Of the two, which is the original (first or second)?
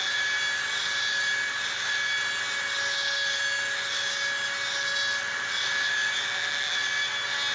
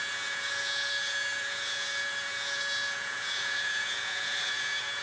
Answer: first